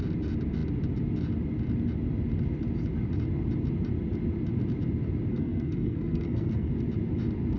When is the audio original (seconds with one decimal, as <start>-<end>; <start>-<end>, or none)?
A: 0.0-5.3; 6.7-7.6